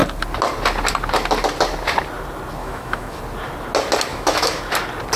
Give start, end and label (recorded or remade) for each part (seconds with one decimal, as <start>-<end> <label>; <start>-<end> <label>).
0.0-2.6 recorded; 2.6-3.2 remade; 3.2-4.1 recorded; 4.1-4.7 remade; 4.7-5.2 recorded